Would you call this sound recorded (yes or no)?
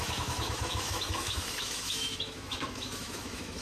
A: no